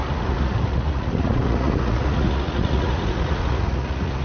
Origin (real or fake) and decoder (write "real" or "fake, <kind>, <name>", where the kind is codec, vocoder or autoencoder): fake, vocoder, Vocos